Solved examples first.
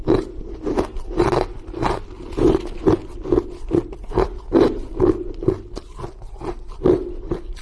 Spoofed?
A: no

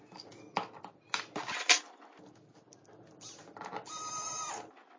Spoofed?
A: no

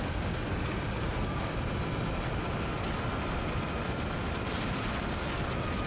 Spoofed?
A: yes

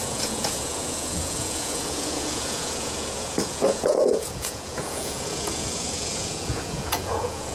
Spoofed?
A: yes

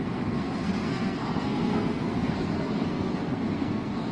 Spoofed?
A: yes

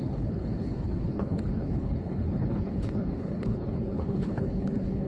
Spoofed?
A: yes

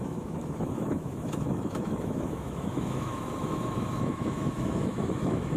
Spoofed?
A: yes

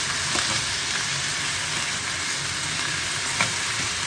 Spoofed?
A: no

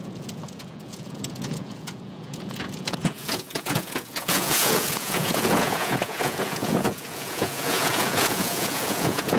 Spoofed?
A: yes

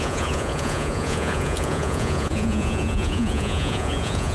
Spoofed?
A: yes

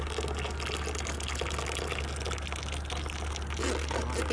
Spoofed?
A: no